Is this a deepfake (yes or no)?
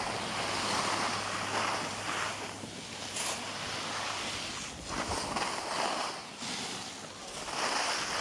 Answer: no